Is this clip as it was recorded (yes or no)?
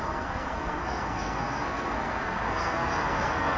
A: no